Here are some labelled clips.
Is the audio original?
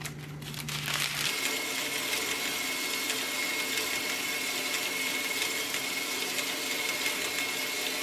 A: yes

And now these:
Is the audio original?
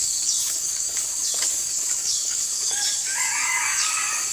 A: no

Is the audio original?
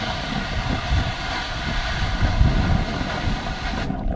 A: yes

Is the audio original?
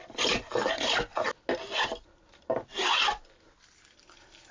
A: yes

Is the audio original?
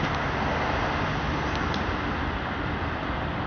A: yes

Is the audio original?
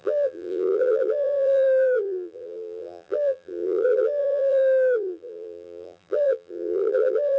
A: no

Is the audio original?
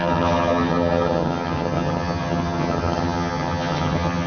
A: no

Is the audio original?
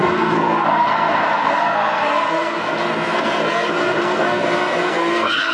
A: no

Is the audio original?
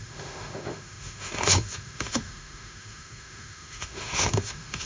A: no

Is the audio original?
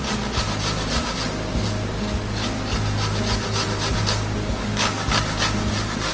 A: yes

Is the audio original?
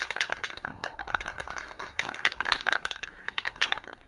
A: no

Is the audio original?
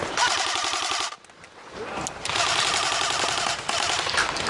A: yes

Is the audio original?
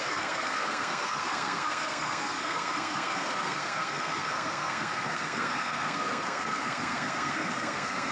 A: no